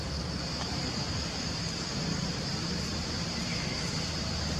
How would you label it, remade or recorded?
remade